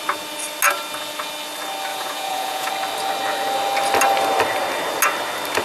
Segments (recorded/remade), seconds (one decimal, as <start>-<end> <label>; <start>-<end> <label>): 0.0-1.9 recorded; 1.9-2.7 remade; 2.7-5.6 recorded